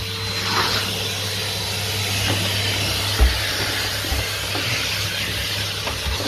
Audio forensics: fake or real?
real